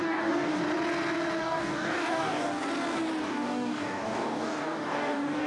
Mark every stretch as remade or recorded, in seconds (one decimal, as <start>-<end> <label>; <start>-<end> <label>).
0.0-0.6 remade; 0.6-1.4 recorded; 1.4-2.6 remade; 2.6-3.2 recorded; 3.2-5.5 remade